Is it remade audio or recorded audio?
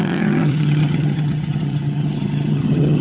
remade